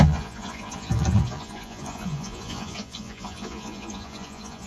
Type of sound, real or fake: fake